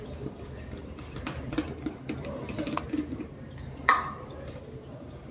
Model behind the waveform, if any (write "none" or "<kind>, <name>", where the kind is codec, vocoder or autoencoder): vocoder, BigVGAN v2